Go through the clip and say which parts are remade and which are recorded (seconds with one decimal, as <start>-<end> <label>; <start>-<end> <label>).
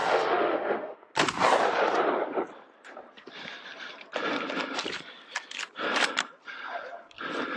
0.0-1.1 remade; 1.1-7.6 recorded